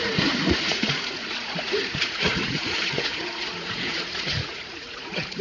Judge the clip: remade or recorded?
remade